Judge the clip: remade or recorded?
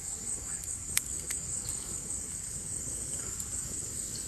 remade